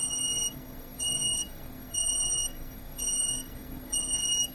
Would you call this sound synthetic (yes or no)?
yes